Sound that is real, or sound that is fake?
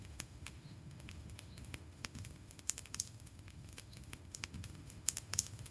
fake